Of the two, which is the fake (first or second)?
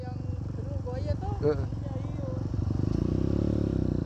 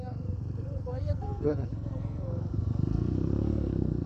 second